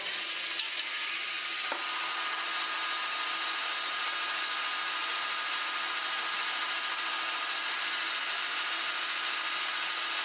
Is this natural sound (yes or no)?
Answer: yes